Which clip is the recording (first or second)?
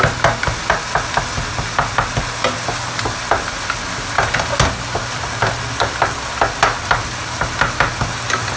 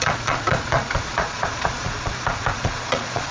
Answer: first